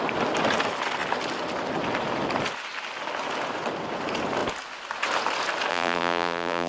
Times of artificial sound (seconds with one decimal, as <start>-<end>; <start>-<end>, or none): 5.7-6.7